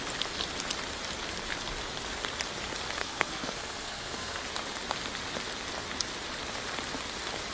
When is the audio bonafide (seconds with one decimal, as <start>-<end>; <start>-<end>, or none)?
0.0-3.0; 4.4-7.5